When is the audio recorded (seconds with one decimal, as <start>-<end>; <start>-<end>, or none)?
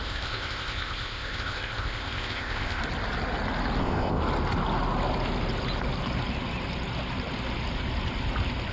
2.8-3.8; 4.2-8.7